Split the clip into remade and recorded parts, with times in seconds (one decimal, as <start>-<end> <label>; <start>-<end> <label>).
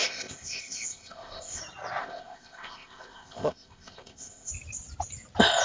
0.0-1.6 remade; 1.6-2.0 recorded; 2.0-4.5 remade; 4.5-5.6 recorded